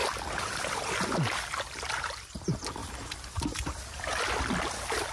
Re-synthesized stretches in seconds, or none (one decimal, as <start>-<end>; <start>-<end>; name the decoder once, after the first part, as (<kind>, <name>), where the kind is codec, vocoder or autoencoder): none